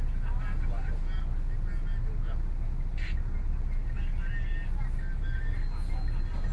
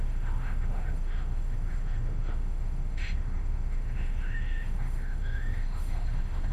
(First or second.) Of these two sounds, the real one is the first